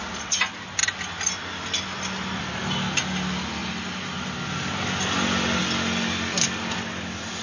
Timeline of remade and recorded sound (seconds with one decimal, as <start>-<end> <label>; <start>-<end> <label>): 0.0-7.4 recorded